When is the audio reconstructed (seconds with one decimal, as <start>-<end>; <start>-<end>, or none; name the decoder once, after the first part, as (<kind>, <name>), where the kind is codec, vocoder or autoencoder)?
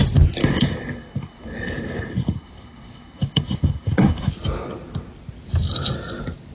0.4-4.3 (codec, HILCodec)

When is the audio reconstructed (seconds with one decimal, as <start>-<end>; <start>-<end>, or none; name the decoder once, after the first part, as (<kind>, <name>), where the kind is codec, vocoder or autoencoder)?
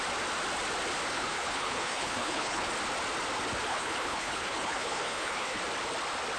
1.1-2.7 (codec, HILCodec); 3.7-5.6